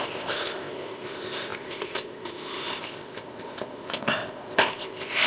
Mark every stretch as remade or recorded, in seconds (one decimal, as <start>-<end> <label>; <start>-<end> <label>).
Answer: 0.0-5.3 remade